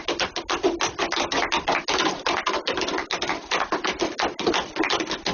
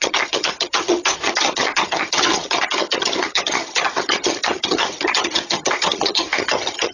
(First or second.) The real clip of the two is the first